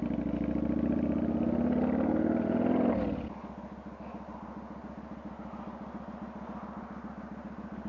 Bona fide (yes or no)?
yes